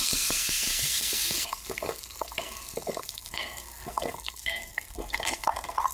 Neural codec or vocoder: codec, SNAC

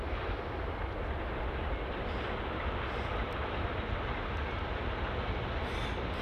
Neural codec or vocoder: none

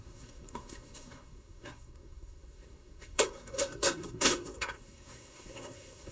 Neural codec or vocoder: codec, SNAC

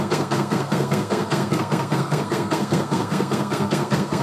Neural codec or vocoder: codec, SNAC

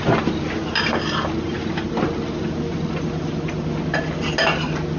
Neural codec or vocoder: none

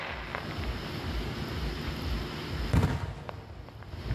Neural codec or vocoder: none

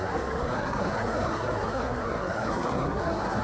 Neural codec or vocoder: codec, SNAC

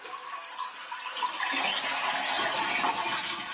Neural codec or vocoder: none